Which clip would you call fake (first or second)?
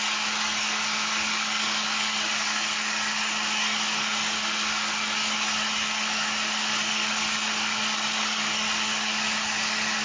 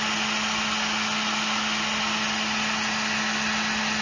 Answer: first